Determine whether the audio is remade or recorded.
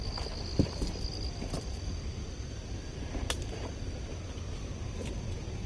recorded